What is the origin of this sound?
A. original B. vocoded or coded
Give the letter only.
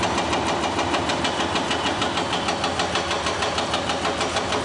A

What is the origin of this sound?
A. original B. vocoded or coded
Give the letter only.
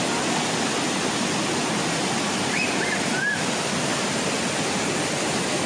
A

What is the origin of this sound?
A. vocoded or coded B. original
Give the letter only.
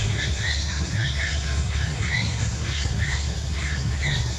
A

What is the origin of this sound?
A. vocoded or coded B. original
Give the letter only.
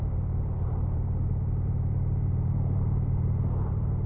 A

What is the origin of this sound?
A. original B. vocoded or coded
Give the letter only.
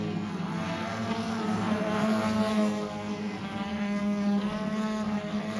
B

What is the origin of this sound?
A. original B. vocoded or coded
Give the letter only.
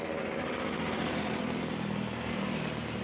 A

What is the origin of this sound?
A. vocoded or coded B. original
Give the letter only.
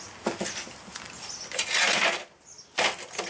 B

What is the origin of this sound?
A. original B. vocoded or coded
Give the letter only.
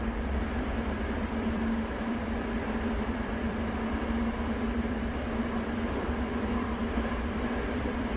B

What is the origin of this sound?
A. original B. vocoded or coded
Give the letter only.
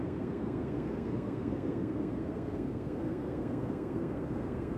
B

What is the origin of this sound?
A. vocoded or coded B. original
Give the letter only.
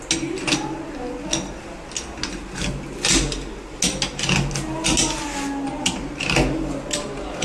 B